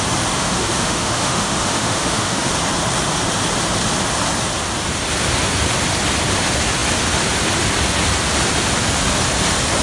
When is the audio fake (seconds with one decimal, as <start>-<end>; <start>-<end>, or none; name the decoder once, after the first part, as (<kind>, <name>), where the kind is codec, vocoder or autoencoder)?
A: 0.4-2.5 (autoencoder, DAC-VAE)